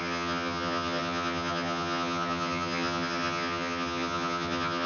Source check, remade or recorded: remade